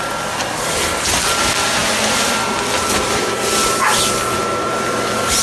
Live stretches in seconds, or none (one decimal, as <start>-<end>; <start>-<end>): 0.0-5.4